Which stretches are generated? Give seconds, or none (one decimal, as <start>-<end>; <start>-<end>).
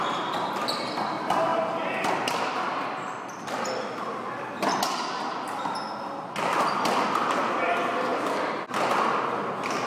none